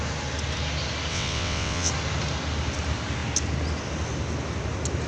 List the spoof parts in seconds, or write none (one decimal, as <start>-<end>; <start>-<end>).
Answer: 1.1-1.9